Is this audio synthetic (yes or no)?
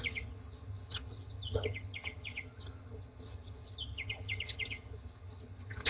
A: yes